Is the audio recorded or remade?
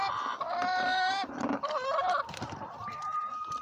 recorded